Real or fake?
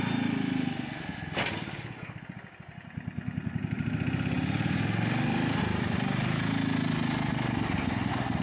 real